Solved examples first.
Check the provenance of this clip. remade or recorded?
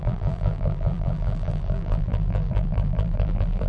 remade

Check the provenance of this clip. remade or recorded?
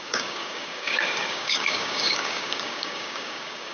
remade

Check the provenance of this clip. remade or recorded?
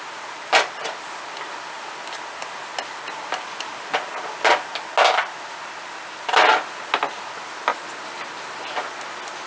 recorded